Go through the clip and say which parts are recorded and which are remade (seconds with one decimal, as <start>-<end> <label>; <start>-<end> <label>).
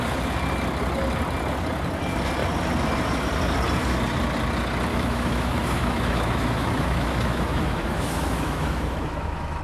0.0-4.9 recorded; 4.9-9.6 remade